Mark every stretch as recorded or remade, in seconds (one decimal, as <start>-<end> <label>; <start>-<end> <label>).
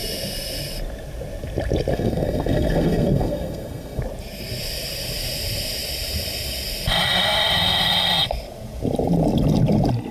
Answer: 0.0-1.9 recorded; 1.9-4.0 remade; 4.0-10.1 recorded